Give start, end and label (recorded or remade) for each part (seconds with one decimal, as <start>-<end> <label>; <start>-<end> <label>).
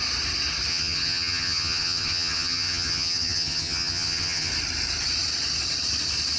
0.0-0.7 recorded; 0.7-4.5 remade; 4.5-6.4 recorded